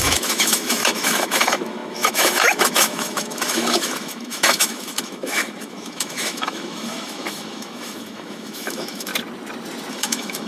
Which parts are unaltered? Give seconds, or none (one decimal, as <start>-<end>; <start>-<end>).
9.1-9.9